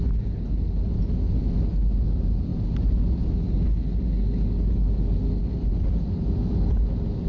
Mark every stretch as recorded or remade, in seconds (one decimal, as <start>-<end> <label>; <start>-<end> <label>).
0.0-7.3 recorded